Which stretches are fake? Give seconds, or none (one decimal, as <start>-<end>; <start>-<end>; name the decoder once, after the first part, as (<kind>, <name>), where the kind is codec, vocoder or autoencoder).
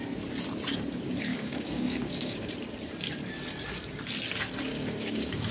1.3-2.5 (codec, DAC); 4.7-5.5